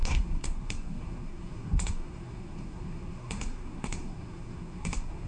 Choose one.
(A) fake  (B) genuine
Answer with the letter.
A